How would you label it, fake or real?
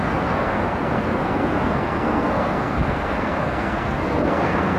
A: fake